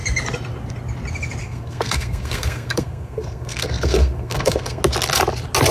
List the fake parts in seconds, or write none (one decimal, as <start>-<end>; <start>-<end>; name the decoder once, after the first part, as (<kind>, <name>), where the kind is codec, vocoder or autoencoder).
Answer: 1.4-4.8 (codec, SNAC)